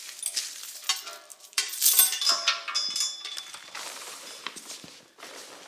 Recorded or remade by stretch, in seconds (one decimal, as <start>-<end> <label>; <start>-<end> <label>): 0.0-1.3 recorded; 1.3-2.2 remade; 2.2-3.3 recorded; 3.3-4.9 remade; 4.9-5.7 recorded